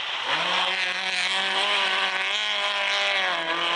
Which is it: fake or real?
real